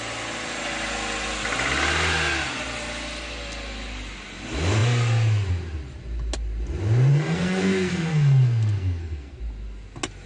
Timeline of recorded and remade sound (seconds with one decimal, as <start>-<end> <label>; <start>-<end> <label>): 0.0-7.1 recorded; 7.1-9.4 remade; 9.4-10.3 recorded